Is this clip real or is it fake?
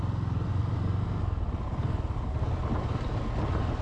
real